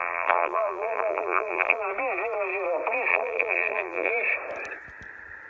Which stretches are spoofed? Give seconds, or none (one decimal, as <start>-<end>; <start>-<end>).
0.0-1.8; 3.1-4.1